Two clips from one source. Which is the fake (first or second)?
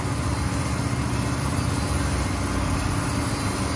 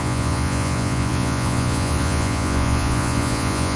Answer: second